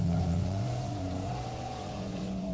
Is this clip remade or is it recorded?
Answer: remade